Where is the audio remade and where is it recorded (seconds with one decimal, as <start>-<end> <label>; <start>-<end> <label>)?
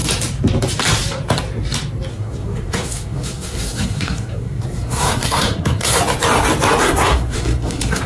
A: 0.0-2.1 recorded; 2.1-6.0 remade; 6.0-6.8 recorded; 6.8-8.1 remade